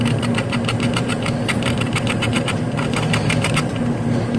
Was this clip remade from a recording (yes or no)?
yes